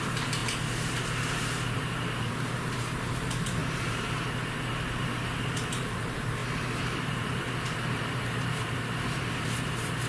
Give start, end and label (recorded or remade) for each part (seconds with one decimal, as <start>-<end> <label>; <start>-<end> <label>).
0.0-10.1 remade